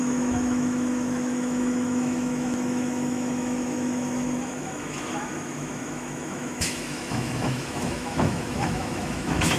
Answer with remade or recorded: remade